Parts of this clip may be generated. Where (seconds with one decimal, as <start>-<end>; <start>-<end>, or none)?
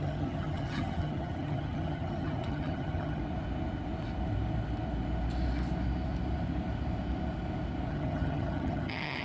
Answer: 0.0-3.2; 7.9-9.2